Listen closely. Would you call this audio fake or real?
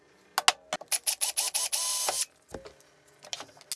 real